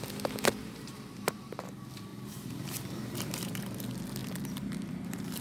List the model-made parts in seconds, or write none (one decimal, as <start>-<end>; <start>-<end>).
0.6-1.5; 2.1-3.8; 4.2-5.4